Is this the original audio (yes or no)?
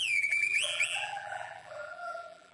no